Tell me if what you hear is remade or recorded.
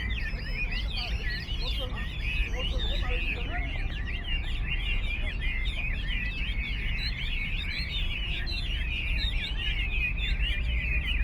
recorded